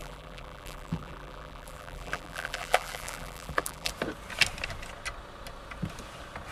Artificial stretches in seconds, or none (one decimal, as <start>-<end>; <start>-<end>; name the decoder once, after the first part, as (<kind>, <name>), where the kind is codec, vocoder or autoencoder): 0.0-3.9 (vocoder, BigVGAN v2)